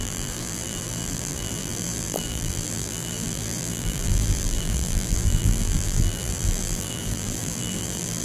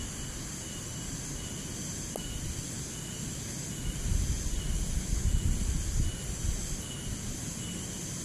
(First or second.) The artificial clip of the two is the first